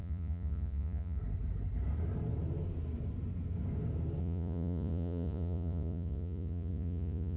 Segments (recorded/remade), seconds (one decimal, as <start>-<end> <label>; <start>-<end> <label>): 0.0-1.2 remade; 1.2-4.2 recorded; 4.2-7.4 remade